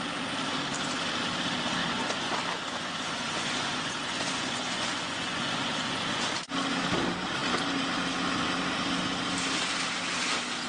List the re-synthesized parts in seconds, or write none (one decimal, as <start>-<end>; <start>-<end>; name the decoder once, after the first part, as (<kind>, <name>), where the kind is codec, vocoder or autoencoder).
1.8-2.3 (vocoder, Vocos); 2.7-6.3

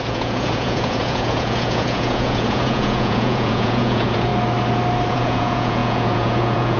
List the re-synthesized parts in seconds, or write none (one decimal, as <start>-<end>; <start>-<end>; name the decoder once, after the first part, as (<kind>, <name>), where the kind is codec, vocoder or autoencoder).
0.0-4.3 (vocoder, Vocos); 5.1-6.8